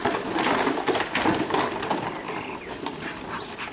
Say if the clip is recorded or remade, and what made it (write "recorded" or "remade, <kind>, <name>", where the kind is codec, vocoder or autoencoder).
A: remade, vocoder, BigVGAN v2